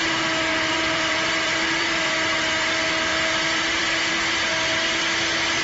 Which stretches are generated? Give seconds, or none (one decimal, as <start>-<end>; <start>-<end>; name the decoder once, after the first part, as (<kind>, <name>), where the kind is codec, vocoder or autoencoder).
0.5-2.1 (vocoder, BigVGAN v2); 3.1-4.1